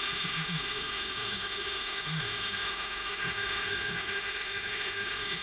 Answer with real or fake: fake